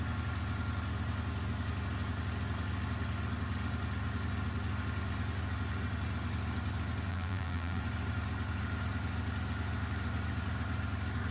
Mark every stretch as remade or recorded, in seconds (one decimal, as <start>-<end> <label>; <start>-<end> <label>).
0.0-7.1 recorded; 7.1-7.8 remade; 7.8-11.3 recorded